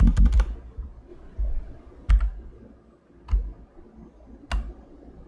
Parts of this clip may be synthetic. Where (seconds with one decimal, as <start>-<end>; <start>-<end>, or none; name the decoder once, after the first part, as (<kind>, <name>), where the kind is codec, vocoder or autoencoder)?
none